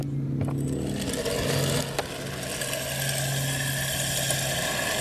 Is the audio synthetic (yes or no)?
no